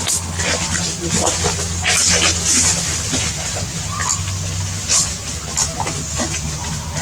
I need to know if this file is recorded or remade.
recorded